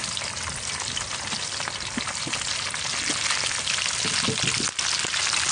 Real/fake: real